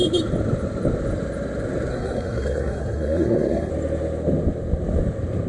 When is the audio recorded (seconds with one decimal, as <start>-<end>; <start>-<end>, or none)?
0.0-1.9; 3.7-5.5